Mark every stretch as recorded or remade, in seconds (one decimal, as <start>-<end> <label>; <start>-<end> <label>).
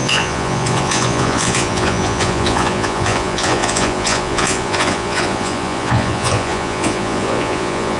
0.0-8.0 remade